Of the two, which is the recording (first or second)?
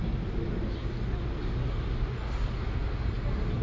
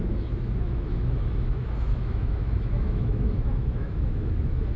first